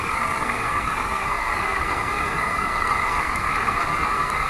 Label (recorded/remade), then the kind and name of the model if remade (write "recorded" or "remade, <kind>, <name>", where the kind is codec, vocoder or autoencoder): remade, codec, SNAC